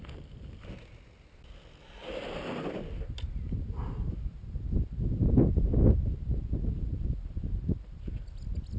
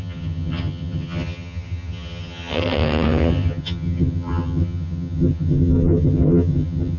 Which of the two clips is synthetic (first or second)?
second